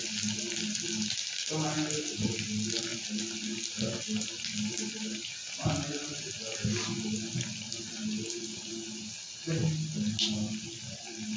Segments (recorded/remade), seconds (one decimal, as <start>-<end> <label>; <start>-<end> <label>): 0.0-11.4 recorded